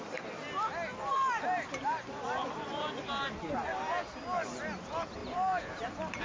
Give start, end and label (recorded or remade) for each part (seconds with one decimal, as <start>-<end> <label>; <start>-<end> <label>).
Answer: 0.0-1.1 recorded; 1.1-4.2 remade; 4.2-5.2 recorded; 5.2-6.2 remade